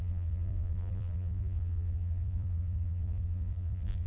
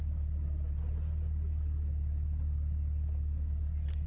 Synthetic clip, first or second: first